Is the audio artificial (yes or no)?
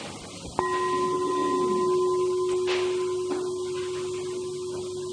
no